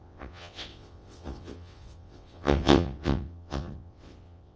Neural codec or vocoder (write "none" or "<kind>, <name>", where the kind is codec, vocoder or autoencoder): vocoder, WaveNeXt